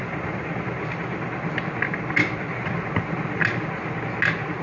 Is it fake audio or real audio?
real